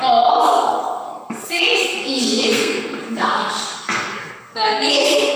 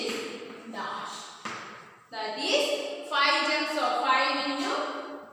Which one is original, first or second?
second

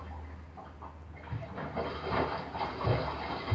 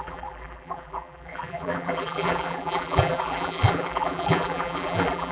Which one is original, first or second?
first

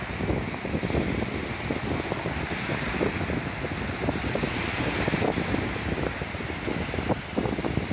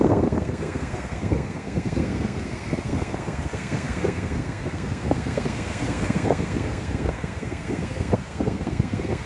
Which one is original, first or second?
first